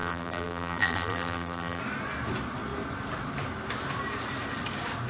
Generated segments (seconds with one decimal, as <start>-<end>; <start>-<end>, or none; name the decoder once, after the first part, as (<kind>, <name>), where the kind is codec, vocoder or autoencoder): 0.0-1.8 (vocoder, BigVGAN v2)